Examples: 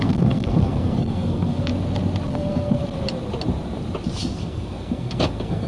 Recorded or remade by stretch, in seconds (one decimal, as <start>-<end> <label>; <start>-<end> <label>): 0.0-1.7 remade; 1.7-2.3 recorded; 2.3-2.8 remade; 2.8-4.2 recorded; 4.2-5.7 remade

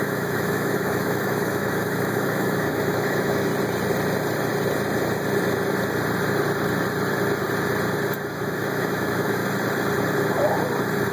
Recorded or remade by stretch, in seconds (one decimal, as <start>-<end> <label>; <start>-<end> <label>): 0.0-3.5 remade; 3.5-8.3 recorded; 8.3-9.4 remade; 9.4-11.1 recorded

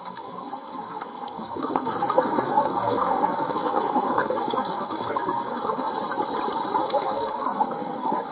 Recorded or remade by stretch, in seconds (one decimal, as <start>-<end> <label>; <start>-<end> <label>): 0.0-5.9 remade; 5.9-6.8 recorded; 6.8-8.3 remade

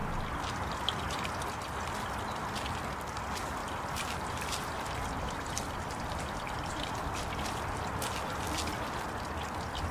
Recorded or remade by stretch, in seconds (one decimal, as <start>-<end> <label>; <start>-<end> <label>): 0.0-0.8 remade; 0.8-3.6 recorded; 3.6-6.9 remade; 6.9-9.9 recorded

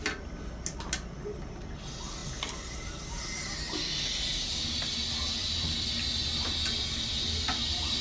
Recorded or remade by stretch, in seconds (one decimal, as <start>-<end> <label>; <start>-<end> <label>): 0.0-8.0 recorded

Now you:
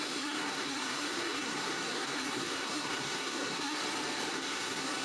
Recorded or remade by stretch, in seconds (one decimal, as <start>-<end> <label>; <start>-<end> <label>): 0.0-3.8 remade; 3.8-4.3 recorded; 4.3-5.0 remade

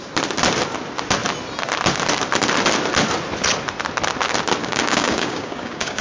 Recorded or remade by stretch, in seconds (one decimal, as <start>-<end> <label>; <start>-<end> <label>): 0.0-4.6 recorded; 4.6-6.0 remade

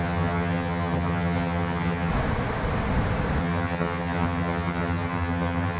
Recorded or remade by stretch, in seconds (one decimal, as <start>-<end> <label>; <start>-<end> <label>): 0.0-2.1 remade; 2.1-3.4 recorded; 3.4-5.8 remade